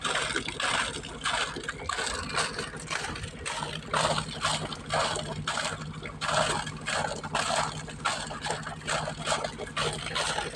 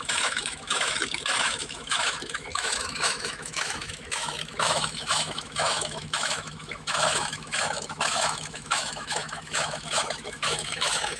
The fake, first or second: second